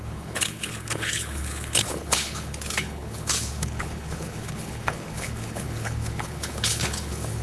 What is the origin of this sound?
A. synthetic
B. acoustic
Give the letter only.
A